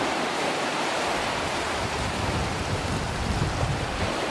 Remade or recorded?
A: remade